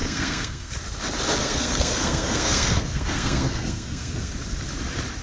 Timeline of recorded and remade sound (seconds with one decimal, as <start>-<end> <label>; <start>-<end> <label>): 0.0-0.7 remade; 0.7-1.4 recorded; 1.4-4.3 remade; 4.3-5.2 recorded